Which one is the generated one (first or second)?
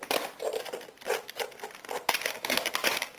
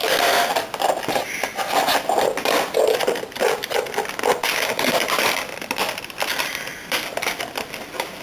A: second